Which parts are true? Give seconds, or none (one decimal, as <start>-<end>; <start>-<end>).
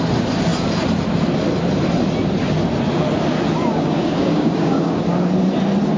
0.0-3.6; 5.0-6.0